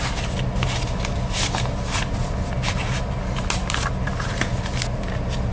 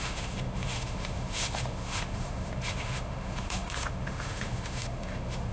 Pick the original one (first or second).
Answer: first